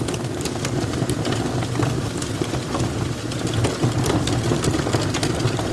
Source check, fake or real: real